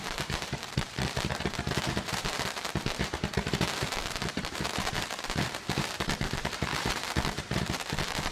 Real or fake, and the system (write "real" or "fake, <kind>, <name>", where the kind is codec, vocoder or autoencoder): fake, vocoder, BigVGAN v2